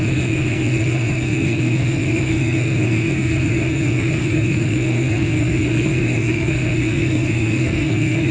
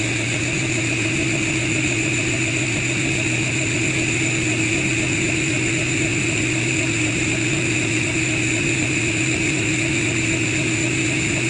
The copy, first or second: first